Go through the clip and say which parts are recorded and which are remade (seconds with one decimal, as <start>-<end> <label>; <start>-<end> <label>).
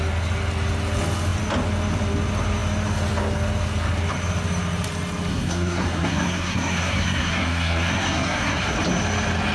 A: 0.0-5.3 recorded; 5.3-8.6 remade; 8.6-9.5 recorded